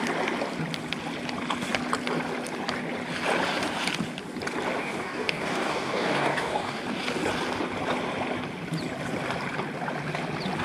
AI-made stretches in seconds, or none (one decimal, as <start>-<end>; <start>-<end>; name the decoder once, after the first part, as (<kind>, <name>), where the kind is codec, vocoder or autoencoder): 4.8-6.8 (codec, DAC)